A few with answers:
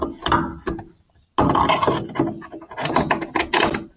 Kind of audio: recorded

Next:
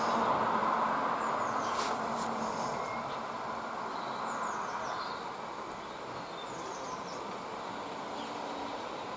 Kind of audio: recorded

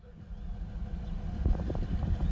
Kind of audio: recorded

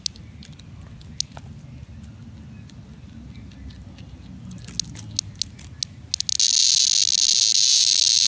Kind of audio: recorded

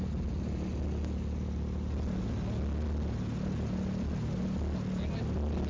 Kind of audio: recorded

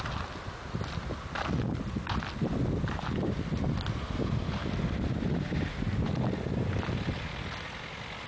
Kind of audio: recorded